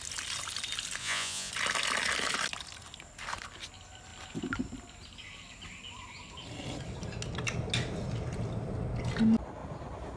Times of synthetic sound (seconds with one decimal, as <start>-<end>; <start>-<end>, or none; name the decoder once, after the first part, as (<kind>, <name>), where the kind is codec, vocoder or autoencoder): 1.0-1.5 (vocoder, Vocos)